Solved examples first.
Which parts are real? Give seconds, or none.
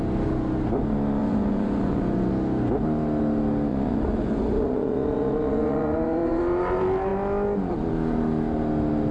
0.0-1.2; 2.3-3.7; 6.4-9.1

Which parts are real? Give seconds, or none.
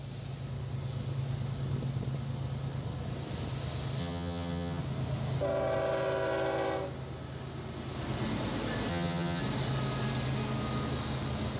0.0-4.0; 4.8-8.9; 9.4-11.6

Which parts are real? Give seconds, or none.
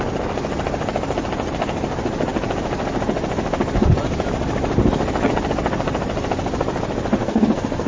0.0-7.2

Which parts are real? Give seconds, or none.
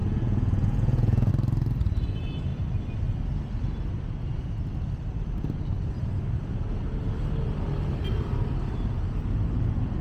1.3-10.0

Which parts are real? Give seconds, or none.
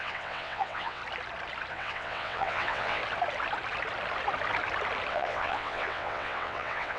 1.0-1.7; 3.0-5.1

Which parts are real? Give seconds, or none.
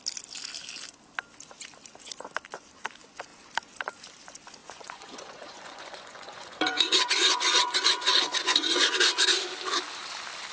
0.0-4.6; 8.9-10.5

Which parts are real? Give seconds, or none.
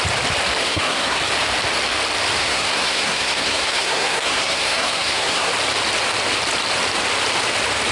0.0-0.6; 1.2-2.4; 5.5-7.9